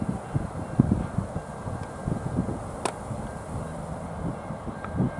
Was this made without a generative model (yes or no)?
yes